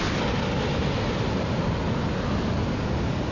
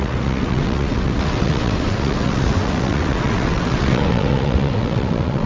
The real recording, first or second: first